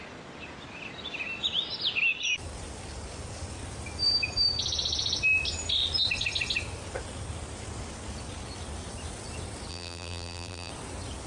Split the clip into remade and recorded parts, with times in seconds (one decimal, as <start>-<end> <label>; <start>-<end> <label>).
0.0-9.7 recorded; 9.7-10.7 remade; 10.7-11.3 recorded

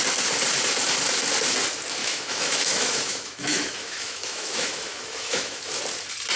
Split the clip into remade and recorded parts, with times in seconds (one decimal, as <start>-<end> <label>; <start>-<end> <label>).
0.0-2.0 recorded; 2.0-5.8 remade; 5.8-6.4 recorded

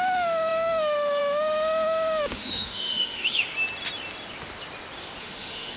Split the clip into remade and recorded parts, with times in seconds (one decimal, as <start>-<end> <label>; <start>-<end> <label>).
0.0-3.4 remade; 3.4-5.2 recorded; 5.2-5.8 remade

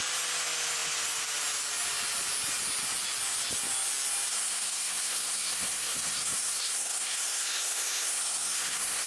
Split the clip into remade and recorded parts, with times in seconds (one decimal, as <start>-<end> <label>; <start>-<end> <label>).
0.0-4.3 recorded; 4.3-9.1 remade

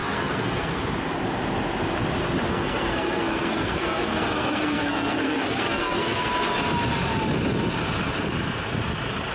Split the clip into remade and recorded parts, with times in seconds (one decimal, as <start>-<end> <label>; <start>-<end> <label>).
0.0-0.8 remade; 0.8-2.5 recorded; 2.5-6.3 remade; 6.3-9.3 recorded

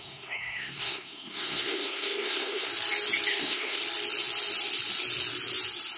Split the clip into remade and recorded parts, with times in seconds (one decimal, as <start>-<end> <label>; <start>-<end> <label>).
0.0-2.7 remade; 2.7-3.3 recorded; 3.3-3.8 remade; 3.8-6.0 recorded